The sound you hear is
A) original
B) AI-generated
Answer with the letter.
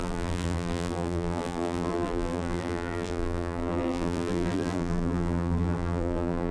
B